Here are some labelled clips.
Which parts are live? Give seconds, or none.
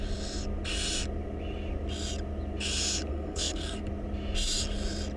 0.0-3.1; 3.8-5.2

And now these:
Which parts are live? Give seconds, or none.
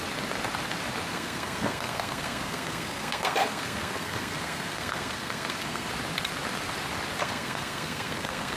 0.0-1.1; 5.9-7.2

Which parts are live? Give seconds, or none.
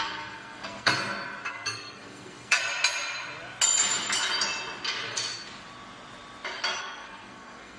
0.9-1.5; 2.6-6.8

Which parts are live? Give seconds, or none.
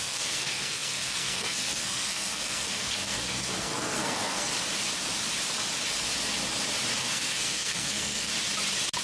4.5-7.0; 8.3-9.0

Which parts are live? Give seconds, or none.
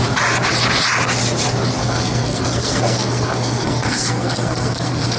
0.0-1.8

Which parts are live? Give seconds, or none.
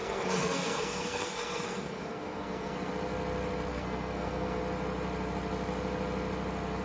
2.9-3.7; 4.6-6.8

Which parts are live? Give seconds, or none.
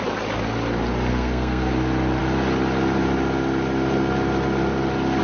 0.0-1.1; 1.7-5.2